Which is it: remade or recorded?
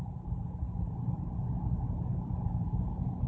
recorded